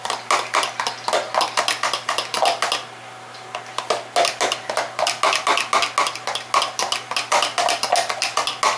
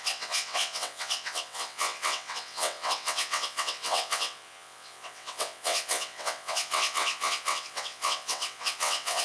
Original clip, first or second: first